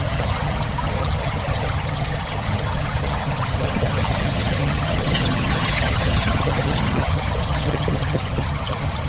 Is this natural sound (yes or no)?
no